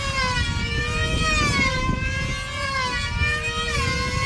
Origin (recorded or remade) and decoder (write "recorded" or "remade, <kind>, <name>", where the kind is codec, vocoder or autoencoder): remade, vocoder, BigVGAN v2